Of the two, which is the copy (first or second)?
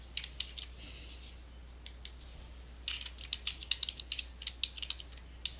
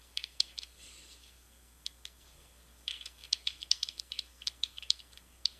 second